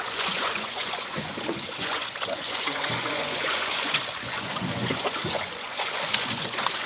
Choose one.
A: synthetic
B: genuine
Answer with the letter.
A